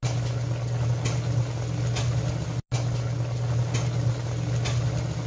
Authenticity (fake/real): real